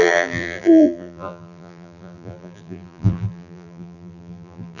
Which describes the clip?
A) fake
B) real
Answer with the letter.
A